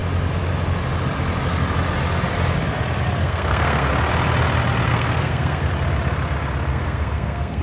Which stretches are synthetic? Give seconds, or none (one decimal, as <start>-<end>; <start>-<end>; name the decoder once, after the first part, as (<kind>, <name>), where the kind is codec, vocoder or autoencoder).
3.2-3.9 (codec, SNAC); 4.9-5.7; 6.7-7.6

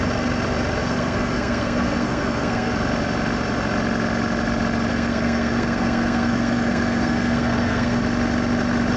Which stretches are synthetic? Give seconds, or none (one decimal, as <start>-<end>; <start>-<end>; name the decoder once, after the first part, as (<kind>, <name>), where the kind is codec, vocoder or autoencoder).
0.8-2.7 (codec, SNAC); 4.9-8.0

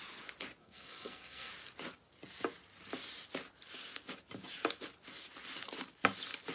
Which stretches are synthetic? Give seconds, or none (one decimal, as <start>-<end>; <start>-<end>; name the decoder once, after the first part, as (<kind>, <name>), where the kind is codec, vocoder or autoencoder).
0.6-1.5 (codec, SNAC)

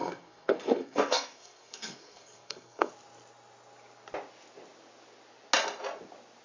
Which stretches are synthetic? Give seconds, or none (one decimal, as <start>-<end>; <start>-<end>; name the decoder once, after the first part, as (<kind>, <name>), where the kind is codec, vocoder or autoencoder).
0.0-2.9 (codec, SNAC)